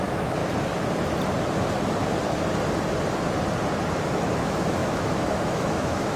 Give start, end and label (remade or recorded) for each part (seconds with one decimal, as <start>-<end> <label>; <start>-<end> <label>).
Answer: 0.0-0.4 remade; 0.4-4.1 recorded; 4.1-6.2 remade